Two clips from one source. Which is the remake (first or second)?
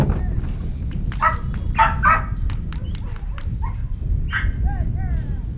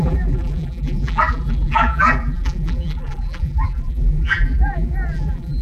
second